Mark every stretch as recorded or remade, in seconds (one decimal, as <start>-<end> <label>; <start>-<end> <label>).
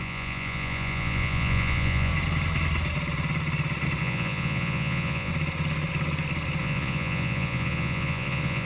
0.0-2.1 remade; 2.1-4.0 recorded; 4.0-5.3 remade; 5.3-6.6 recorded; 6.6-8.7 remade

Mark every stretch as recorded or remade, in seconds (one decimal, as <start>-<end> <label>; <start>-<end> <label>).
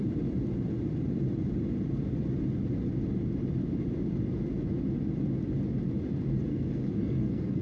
0.0-6.5 recorded; 6.5-7.6 remade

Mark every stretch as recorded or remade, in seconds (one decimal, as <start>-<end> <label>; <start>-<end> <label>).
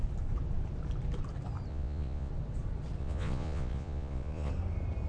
0.0-1.7 recorded; 1.7-2.3 remade; 2.3-3.0 recorded; 3.0-4.5 remade; 4.5-5.1 recorded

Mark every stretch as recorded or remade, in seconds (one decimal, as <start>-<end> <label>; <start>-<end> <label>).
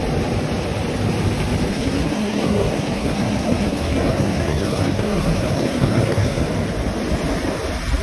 0.0-1.7 recorded; 1.7-6.5 remade; 6.5-8.0 recorded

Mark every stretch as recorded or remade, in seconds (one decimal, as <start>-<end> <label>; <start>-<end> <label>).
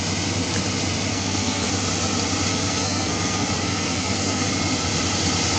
0.0-1.1 recorded; 1.1-1.7 remade; 1.7-2.5 recorded; 2.5-4.5 remade; 4.5-5.6 recorded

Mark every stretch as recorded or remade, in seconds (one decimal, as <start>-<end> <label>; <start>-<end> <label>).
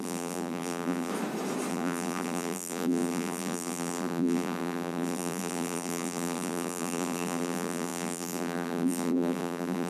0.0-1.1 remade; 1.1-1.7 recorded; 1.7-9.9 remade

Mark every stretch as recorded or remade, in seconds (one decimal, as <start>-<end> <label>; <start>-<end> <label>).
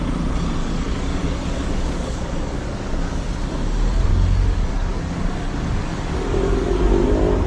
0.0-0.6 recorded; 0.6-3.3 remade; 3.3-4.1 recorded; 4.1-6.8 remade; 6.8-7.5 recorded